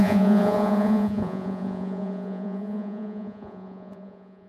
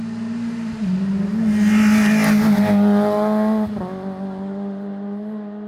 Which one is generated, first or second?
first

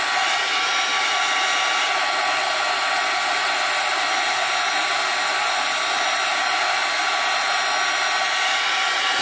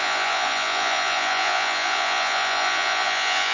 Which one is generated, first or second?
second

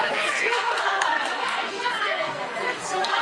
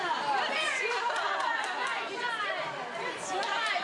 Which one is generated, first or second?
first